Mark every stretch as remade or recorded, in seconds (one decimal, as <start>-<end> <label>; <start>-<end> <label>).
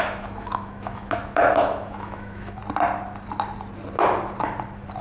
0.0-2.6 remade; 2.6-5.0 recorded